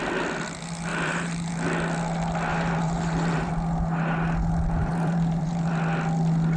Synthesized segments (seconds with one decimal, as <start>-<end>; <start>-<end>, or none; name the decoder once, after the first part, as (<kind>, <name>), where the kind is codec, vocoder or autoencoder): 0.9-1.5 (vocoder, BigVGAN v2); 2.5-3.5; 4.8-5.7